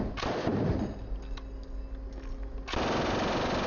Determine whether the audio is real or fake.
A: real